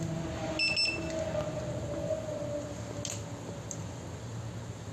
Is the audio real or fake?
real